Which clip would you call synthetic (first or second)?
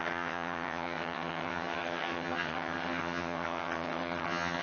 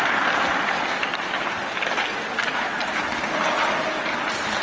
first